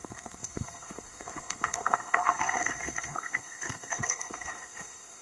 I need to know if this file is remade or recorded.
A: remade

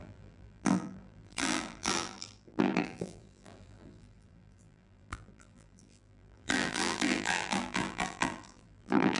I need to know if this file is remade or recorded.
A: remade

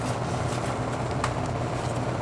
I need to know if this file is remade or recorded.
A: recorded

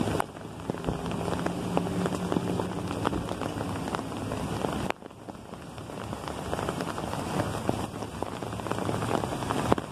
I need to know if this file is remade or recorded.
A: recorded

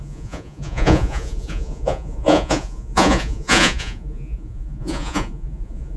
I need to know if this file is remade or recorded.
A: remade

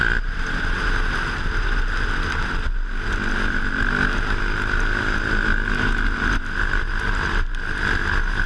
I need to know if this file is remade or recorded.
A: recorded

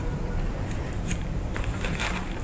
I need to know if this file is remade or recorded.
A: remade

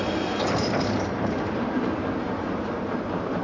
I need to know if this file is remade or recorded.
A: remade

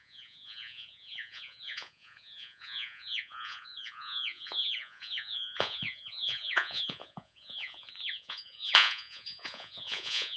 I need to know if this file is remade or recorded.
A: remade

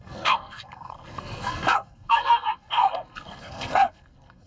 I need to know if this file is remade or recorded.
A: remade